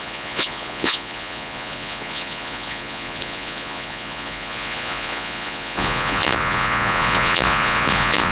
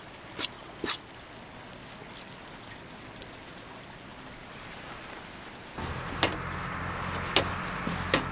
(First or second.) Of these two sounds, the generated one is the first